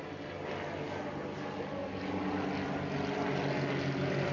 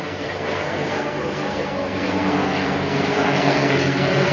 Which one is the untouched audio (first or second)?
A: first